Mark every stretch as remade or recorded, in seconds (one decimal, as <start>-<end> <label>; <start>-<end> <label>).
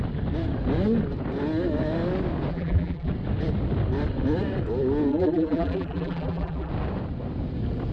0.0-2.5 recorded; 2.5-3.1 remade; 3.1-5.1 recorded; 5.1-6.7 remade; 6.7-7.9 recorded